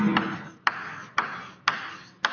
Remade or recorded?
recorded